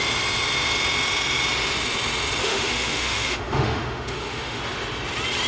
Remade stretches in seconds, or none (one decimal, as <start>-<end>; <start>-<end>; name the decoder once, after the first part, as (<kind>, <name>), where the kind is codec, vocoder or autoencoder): 2.4-4.6 (autoencoder, DAC-VAE)